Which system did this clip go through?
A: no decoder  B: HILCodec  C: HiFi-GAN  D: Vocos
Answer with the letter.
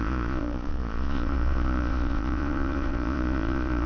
D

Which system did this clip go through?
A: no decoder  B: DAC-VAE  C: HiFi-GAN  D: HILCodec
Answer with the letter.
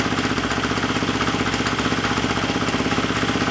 A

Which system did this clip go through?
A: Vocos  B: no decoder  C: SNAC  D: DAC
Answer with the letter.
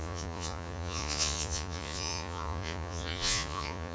A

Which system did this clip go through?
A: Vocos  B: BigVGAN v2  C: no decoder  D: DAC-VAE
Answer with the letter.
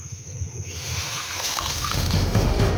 D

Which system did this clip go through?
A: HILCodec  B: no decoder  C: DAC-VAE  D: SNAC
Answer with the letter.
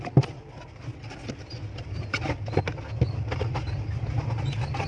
B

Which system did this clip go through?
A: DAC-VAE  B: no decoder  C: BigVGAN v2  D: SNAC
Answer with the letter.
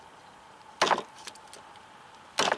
B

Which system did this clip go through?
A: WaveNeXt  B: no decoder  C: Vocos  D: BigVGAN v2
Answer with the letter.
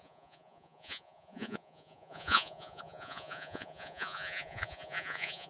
C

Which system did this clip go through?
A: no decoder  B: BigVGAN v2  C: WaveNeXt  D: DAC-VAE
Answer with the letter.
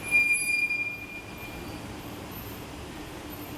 A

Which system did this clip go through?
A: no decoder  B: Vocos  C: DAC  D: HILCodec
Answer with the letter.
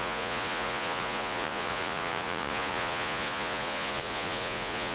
B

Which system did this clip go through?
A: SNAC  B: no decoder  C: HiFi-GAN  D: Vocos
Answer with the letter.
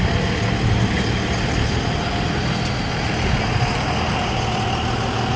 B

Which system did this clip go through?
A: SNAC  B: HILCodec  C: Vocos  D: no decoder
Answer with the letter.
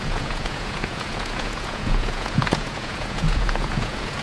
C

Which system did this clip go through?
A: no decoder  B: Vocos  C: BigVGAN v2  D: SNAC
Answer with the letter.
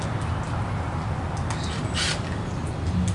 A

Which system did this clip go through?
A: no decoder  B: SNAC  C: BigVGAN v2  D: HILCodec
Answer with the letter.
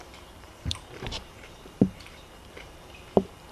C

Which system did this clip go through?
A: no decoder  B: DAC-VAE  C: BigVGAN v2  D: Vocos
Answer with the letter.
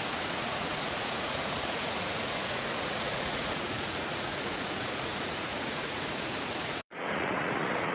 D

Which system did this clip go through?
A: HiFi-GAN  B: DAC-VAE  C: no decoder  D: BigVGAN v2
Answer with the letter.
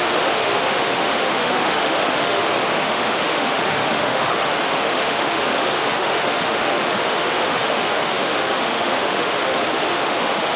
B